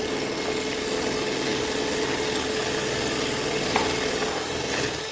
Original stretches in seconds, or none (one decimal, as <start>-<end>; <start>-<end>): 0.0-5.1